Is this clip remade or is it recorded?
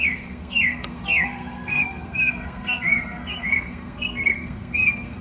remade